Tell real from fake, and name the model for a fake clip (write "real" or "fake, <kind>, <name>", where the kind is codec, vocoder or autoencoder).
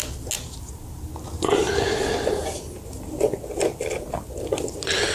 real